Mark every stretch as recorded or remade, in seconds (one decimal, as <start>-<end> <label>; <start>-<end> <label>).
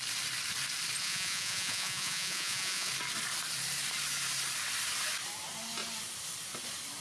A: 0.0-1.0 recorded; 1.0-2.9 remade; 2.9-7.0 recorded